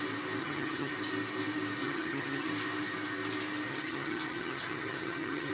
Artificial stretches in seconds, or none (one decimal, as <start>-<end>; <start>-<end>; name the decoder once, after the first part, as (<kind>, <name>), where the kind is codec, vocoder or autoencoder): 0.4-0.9 (vocoder, HiFi-GAN); 1.8-2.5; 3.7-5.5